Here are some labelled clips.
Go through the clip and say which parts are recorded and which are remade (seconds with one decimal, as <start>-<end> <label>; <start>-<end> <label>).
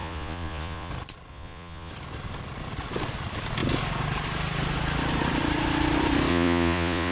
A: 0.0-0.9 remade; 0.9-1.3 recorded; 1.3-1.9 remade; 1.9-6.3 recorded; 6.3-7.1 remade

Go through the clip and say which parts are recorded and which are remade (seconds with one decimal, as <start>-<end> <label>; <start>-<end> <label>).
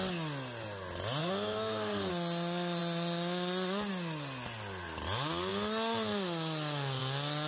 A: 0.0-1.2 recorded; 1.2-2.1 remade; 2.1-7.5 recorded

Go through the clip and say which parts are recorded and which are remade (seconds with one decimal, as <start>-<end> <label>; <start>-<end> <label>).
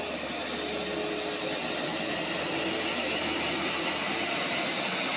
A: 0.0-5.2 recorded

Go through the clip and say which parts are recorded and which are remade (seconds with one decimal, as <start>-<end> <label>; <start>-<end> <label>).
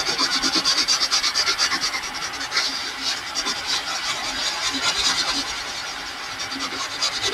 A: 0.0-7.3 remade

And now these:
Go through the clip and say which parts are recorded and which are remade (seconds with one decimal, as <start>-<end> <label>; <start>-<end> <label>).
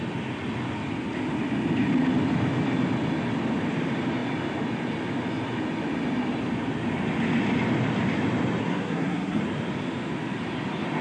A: 0.0-8.6 recorded; 8.6-9.4 remade; 9.4-11.0 recorded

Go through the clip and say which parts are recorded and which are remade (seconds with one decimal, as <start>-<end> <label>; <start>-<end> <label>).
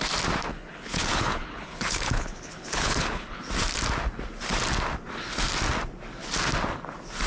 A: 0.0-0.5 recorded; 0.5-3.4 remade; 3.4-7.3 recorded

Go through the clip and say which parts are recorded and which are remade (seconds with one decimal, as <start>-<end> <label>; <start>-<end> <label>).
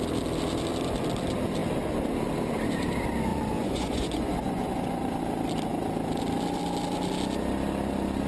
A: 0.0-3.3 recorded; 3.3-5.1 remade; 5.1-8.3 recorded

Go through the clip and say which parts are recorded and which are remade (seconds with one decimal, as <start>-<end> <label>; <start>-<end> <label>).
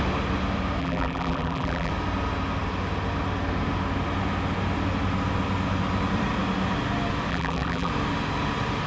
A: 0.0-0.8 recorded; 0.8-1.9 remade; 1.9-7.3 recorded; 7.3-7.9 remade; 7.9-8.9 recorded